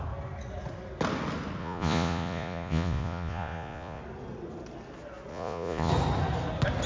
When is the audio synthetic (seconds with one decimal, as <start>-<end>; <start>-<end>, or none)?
1.6-4.0; 5.3-5.9